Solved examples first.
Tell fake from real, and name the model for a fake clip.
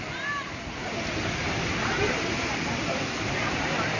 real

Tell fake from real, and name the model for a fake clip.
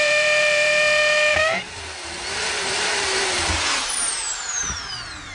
fake, vocoder, BigVGAN v2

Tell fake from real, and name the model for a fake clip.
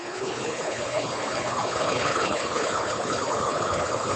fake, codec, HILCodec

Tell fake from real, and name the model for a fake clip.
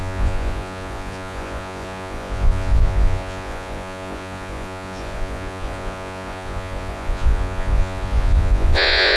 fake, vocoder, Vocos